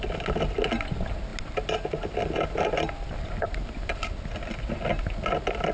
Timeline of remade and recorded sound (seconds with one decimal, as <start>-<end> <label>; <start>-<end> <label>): 0.0-5.7 recorded